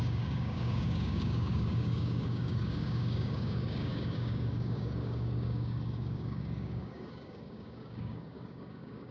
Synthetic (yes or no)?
yes